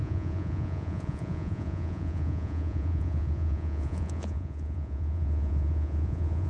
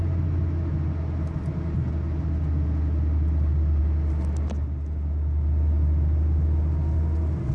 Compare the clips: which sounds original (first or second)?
second